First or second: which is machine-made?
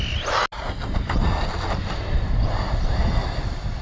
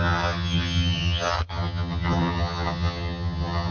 second